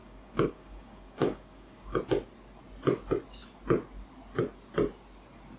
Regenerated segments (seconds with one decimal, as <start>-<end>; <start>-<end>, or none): 0.0-2.0